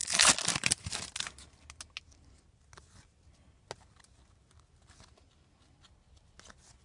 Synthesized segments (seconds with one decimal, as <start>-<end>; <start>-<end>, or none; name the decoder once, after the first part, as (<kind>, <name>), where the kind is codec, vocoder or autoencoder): none